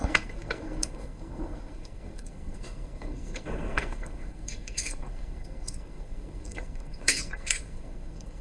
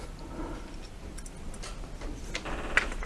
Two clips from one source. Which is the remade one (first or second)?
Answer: first